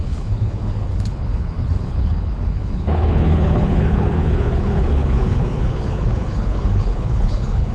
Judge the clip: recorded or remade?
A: remade